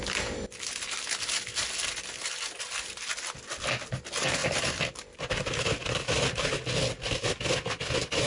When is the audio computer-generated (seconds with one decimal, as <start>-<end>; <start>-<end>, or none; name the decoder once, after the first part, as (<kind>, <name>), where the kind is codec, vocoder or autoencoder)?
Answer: 4.4-5.8 (vocoder, BigVGAN v2)